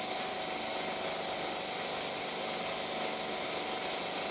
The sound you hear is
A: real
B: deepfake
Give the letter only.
A